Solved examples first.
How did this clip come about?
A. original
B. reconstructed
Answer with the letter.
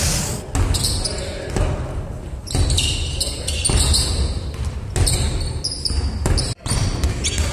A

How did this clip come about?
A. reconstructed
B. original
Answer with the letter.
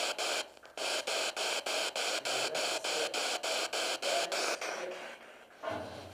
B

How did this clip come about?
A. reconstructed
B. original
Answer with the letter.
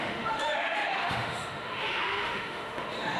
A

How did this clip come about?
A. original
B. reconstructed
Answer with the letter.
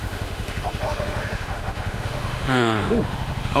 B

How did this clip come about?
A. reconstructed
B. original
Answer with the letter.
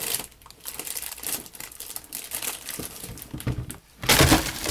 B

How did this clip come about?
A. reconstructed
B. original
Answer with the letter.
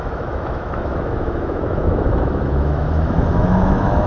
A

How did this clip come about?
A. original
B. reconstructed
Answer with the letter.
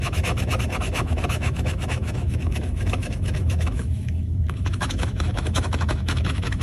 B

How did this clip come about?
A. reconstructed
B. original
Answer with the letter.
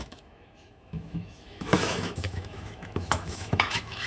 A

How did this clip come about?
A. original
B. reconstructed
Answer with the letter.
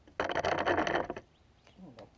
A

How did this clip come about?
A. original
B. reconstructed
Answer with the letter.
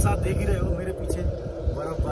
A